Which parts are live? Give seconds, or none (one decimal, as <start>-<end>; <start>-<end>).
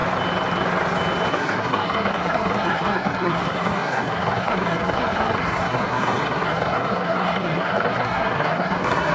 0.0-1.3